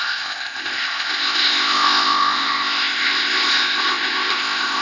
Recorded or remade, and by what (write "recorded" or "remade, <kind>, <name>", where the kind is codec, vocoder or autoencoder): remade, codec, ZipCodec